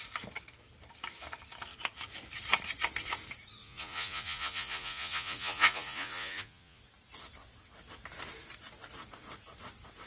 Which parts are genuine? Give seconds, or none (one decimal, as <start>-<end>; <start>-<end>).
0.0-3.6; 6.8-10.1